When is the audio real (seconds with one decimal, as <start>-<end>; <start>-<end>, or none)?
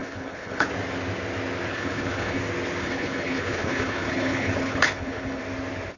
0.7-1.7; 2.4-2.8; 5.4-6.0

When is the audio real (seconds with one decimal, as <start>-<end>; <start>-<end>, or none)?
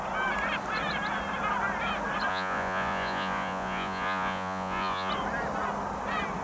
0.0-2.3; 5.1-6.4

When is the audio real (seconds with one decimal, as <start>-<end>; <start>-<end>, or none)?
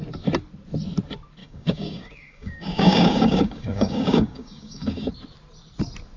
0.0-1.4; 5.1-6.2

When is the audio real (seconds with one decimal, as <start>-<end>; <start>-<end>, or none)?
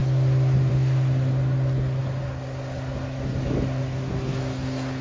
0.0-5.0